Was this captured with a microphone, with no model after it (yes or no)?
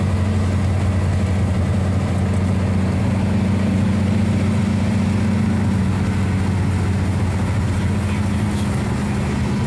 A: yes